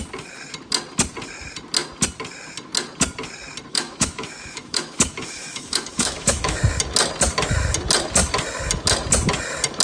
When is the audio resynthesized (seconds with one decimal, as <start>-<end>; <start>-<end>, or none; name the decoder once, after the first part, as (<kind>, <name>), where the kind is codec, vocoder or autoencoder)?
3.7-6.6 (autoencoder, DAC-VAE)